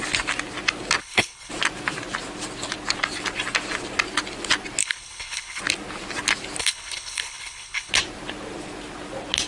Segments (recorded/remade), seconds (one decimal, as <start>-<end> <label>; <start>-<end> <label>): 0.0-1.0 recorded; 1.0-1.5 remade; 1.5-4.8 recorded; 4.8-5.6 remade; 5.6-6.6 recorded; 6.6-7.9 remade; 7.9-9.5 recorded